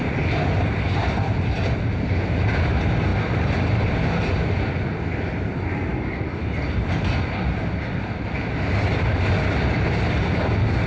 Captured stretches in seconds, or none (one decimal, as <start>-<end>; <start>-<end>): 0.0-10.9